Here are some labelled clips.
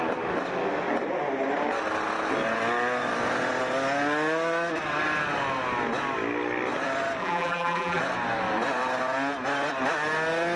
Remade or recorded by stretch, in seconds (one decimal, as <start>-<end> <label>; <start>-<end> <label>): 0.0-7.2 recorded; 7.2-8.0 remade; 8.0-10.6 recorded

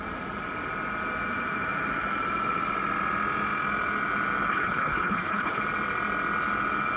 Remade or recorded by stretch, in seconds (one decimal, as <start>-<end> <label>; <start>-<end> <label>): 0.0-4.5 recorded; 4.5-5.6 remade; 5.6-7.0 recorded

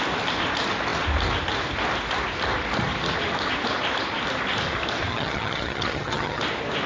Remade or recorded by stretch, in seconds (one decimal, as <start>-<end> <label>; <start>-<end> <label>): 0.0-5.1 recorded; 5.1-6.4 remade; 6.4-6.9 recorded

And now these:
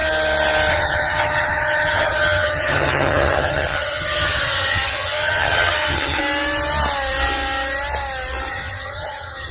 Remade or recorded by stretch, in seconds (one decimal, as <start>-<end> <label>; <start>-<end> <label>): 0.0-0.7 recorded; 0.7-6.2 remade; 6.2-8.5 recorded; 8.5-9.5 remade